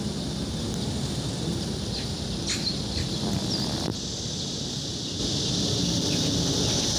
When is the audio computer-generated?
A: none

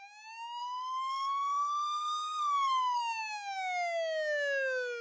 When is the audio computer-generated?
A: 0.6-3.0 (codec, SNAC)

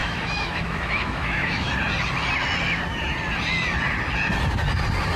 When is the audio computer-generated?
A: 0.0-1.7 (autoencoder, DAC-VAE)